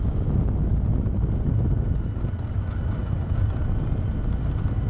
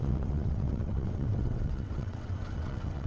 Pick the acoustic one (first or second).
first